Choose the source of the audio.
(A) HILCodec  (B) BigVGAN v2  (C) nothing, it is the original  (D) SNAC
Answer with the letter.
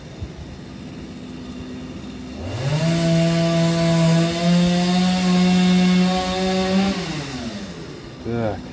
C